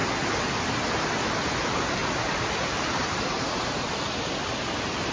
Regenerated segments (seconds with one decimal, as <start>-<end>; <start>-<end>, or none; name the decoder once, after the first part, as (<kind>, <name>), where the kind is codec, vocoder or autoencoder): 2.0-4.0 (vocoder, BigVGAN v2)